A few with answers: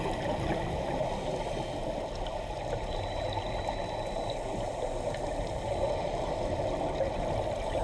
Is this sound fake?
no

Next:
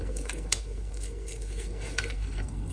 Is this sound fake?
yes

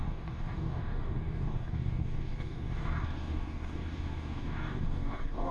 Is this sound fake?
yes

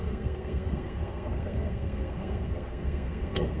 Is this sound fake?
yes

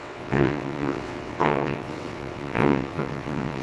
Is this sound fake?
yes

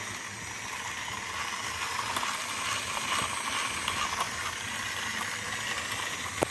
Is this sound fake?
no